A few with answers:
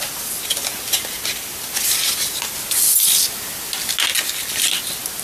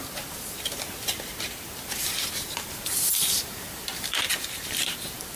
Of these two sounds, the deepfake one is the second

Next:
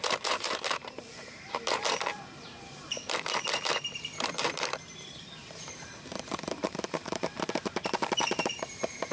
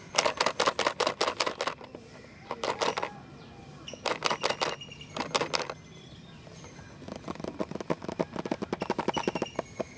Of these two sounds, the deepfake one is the first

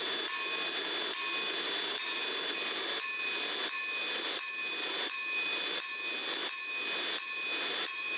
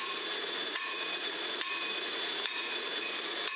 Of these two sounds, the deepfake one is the second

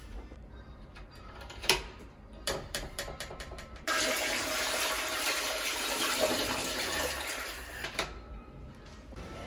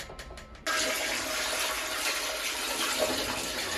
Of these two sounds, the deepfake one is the first